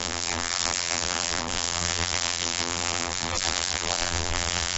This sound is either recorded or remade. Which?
remade